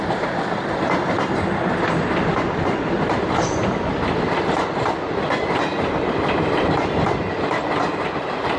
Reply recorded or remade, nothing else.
recorded